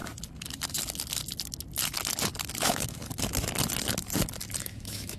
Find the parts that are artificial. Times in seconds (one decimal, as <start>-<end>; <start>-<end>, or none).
2.6-3.0; 4.6-5.2